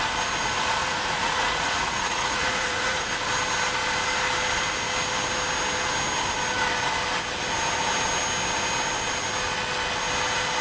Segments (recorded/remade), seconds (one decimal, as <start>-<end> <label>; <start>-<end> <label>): 0.0-0.8 recorded; 0.8-3.1 remade; 3.1-10.6 recorded